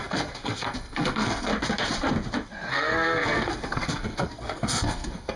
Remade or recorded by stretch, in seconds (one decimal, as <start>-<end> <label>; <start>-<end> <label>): 0.0-1.5 remade; 1.5-2.7 recorded; 2.7-5.4 remade